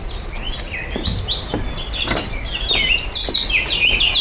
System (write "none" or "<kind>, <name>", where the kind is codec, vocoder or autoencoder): none